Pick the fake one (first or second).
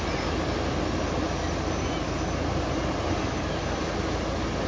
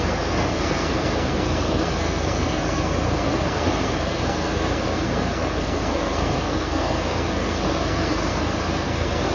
second